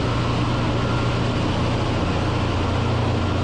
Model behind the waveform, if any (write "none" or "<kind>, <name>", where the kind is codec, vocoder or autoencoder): none